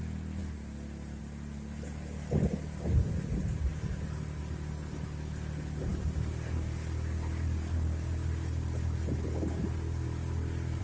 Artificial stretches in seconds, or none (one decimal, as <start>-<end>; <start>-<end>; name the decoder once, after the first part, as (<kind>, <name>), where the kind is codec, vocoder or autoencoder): none